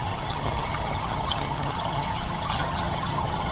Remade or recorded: remade